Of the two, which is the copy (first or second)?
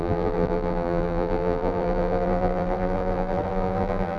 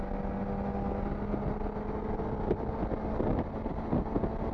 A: first